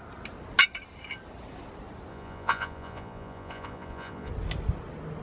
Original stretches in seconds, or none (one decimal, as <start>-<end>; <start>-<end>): 0.0-2.1; 4.3-5.2